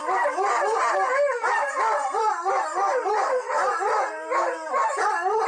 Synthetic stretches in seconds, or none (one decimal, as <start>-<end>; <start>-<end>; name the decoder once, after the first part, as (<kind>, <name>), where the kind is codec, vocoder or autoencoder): 0.0-0.8 (vocoder, BigVGAN v2); 1.6-3.8